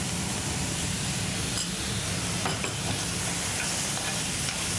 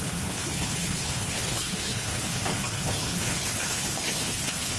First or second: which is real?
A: first